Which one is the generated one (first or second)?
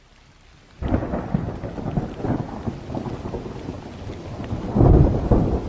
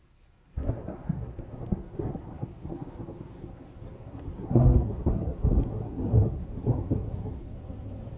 second